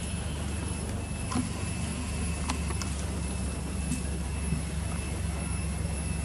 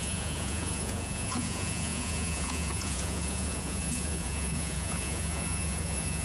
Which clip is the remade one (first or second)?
second